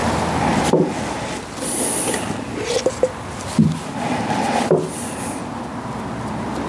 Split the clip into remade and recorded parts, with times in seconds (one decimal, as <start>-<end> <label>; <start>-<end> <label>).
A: 0.0-6.7 recorded